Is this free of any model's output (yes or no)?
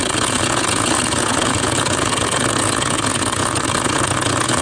no